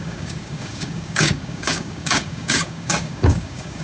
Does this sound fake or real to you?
fake